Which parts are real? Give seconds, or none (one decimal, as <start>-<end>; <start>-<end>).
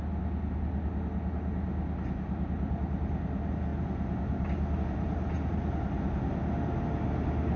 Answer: 0.0-7.6